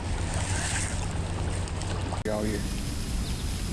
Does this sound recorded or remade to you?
recorded